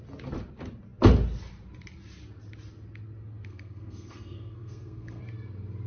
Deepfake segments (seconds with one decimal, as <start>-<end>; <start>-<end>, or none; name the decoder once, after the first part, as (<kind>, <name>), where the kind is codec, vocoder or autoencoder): 3.5-5.2 (codec, SNAC)

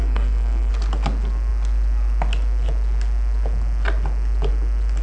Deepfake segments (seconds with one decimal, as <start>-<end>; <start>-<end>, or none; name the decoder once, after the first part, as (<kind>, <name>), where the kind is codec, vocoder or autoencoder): 0.0-0.7 (codec, SNAC)

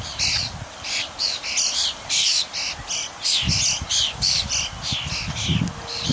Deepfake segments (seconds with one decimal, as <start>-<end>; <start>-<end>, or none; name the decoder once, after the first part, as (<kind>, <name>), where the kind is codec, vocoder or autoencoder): none

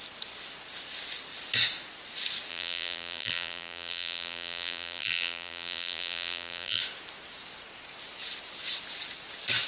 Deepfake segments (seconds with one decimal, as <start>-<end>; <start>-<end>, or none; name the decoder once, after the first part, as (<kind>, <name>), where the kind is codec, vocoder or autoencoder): 2.5-6.8 (vocoder, BigVGAN v2)

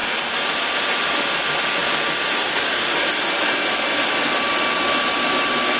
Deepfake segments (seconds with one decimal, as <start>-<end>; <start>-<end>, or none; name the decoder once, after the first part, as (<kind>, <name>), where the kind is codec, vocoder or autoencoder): none

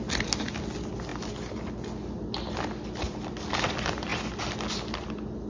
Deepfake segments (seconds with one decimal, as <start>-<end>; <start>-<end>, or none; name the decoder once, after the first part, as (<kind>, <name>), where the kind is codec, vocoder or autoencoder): none